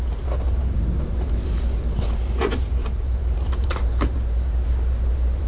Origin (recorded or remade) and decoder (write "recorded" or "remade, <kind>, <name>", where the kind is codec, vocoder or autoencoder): remade, vocoder, BigVGAN v2